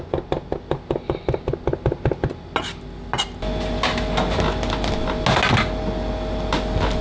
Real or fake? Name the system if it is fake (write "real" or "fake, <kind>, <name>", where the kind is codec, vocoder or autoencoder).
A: real